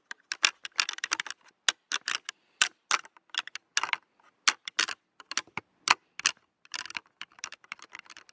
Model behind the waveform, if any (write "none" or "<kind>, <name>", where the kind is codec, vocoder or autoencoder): none